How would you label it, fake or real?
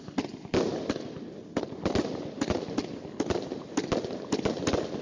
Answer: real